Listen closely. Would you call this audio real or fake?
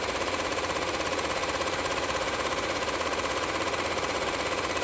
fake